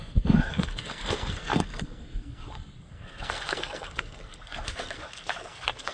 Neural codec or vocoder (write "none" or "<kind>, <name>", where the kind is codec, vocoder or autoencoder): codec, SNAC